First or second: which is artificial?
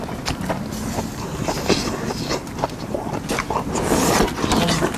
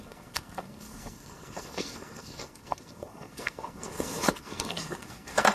second